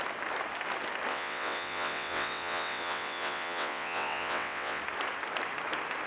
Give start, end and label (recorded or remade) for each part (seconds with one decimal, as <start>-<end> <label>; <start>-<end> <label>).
0.0-1.1 recorded; 1.1-4.8 remade; 4.8-6.1 recorded